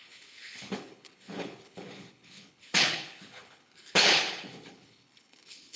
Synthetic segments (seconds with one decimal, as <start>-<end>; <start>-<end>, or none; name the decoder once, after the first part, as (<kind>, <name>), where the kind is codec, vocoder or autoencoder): 0.0-5.8 (codec, HILCodec)